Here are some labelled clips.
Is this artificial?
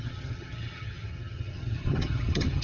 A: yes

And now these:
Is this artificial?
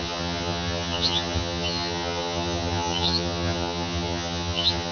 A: yes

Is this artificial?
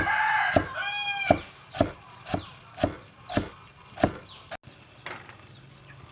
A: no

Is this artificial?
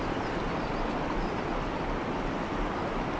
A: no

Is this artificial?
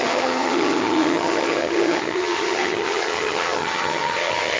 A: yes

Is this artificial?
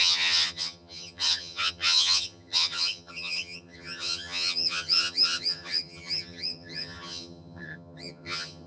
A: yes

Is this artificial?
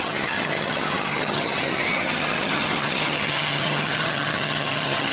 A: yes